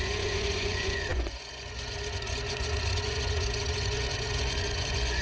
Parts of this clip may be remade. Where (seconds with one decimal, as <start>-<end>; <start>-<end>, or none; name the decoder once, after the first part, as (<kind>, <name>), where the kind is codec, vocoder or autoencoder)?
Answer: 0.0-5.2 (vocoder, Vocos)